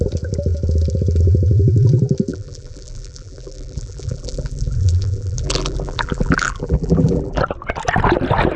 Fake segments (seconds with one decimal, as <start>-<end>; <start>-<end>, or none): 2.3-7.4